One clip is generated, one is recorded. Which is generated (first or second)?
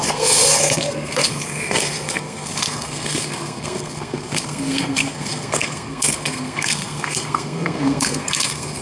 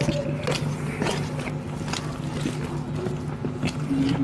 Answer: first